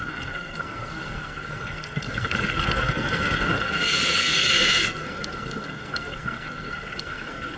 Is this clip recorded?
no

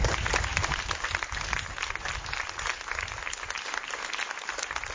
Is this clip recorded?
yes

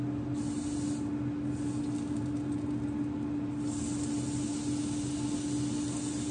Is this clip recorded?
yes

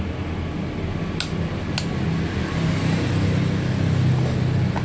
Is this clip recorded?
yes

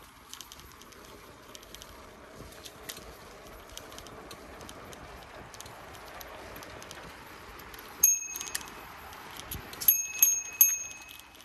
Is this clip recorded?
yes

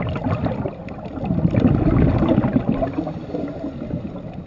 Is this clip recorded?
yes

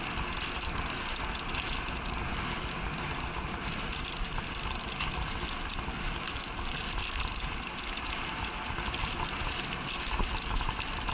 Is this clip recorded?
yes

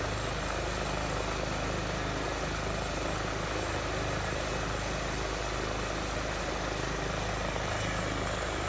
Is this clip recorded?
yes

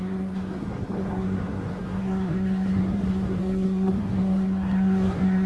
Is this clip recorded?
no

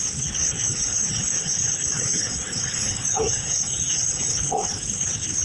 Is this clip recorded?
no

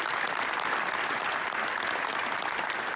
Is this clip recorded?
yes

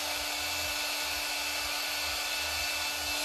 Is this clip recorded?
yes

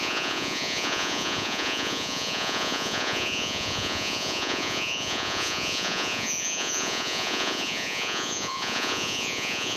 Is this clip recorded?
no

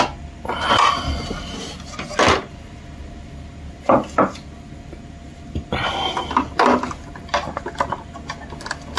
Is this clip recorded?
yes